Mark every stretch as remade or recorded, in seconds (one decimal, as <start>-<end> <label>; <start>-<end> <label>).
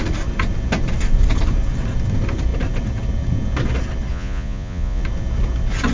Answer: 0.0-4.1 recorded; 4.1-5.0 remade; 5.0-5.9 recorded